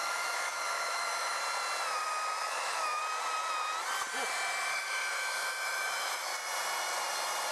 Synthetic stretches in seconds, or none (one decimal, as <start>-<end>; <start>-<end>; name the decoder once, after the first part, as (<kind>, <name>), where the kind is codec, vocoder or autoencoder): 0.0-1.4 (autoencoder, DAC-VAE); 2.4-3.0; 4.7-6.3